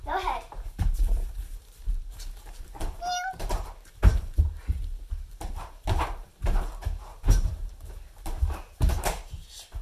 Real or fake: fake